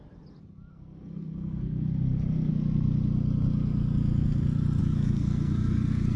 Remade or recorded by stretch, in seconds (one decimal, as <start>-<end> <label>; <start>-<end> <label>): 0.0-0.7 recorded; 0.7-2.5 remade; 2.5-4.8 recorded; 4.8-6.2 remade